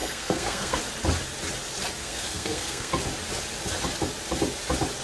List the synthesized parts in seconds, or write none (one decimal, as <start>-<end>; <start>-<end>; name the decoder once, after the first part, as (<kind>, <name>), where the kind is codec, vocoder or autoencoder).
0.0-0.8 (codec, SNAC); 2.0-2.9